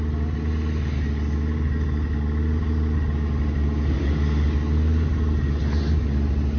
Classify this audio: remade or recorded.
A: recorded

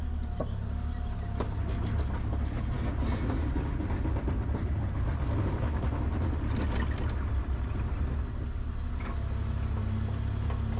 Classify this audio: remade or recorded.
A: recorded